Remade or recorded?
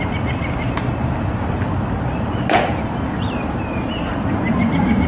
remade